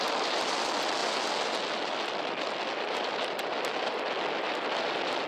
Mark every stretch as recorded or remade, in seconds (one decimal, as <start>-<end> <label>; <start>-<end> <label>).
0.0-5.3 recorded